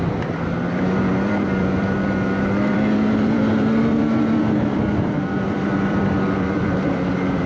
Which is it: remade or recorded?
remade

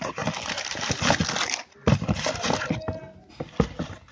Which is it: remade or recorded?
recorded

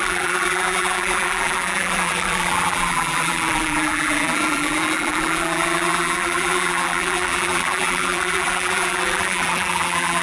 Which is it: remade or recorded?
remade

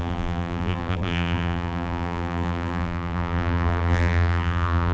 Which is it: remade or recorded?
remade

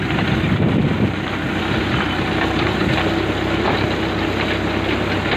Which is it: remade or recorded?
recorded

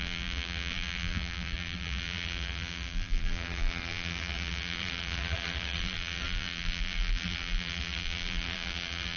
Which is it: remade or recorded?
remade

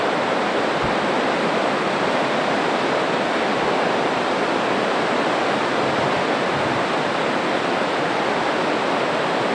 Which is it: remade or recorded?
remade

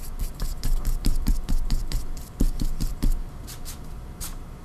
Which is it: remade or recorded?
remade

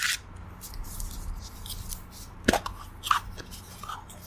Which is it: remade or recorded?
recorded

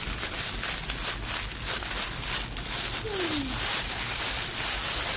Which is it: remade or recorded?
recorded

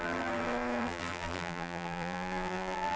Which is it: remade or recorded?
remade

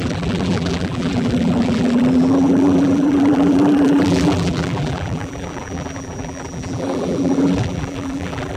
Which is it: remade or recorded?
remade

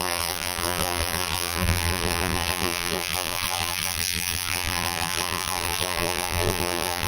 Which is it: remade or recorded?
remade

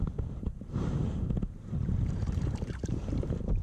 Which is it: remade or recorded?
remade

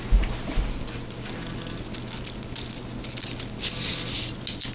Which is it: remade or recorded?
recorded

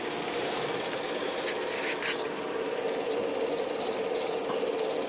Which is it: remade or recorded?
recorded